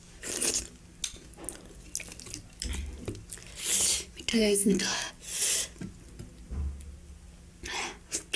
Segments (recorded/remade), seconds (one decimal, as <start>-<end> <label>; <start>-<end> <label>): 0.0-4.3 recorded; 4.3-5.1 remade; 5.1-8.4 recorded